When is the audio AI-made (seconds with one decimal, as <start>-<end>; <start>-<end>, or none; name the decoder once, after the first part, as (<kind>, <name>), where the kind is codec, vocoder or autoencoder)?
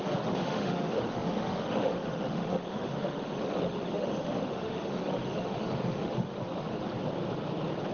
0.0-6.9 (autoencoder, DAC-VAE)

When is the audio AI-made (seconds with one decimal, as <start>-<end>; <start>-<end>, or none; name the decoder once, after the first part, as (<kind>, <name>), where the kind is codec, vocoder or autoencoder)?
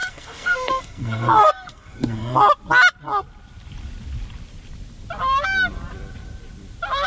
0.0-2.4 (codec, SNAC)